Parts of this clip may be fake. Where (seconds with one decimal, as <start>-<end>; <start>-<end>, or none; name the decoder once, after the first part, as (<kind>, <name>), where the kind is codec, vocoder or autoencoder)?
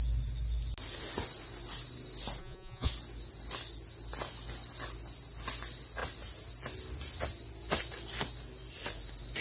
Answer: 2.4-2.9 (vocoder, Vocos)